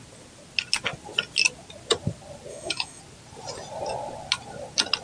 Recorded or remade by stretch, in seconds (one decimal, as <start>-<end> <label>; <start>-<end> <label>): 0.0-2.5 recorded; 2.5-3.0 remade; 3.0-5.0 recorded